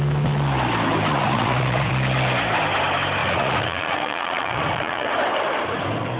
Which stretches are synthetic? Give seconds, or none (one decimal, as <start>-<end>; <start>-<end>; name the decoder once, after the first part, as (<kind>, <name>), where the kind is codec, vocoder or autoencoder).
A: 1.1-1.9 (vocoder, Vocos); 3.2-5.1